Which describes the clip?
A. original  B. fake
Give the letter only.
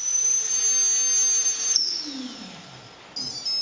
A